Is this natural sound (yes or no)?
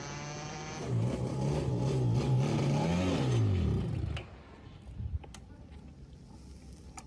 yes